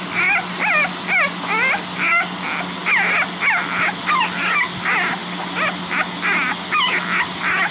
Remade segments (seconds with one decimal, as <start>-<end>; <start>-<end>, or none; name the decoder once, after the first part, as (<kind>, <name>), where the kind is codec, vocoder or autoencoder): none